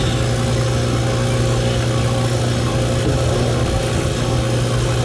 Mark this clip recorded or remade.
recorded